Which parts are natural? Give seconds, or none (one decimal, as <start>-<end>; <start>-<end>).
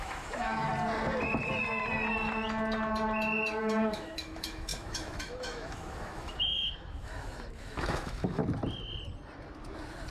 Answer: 0.7-3.6; 8.4-10.1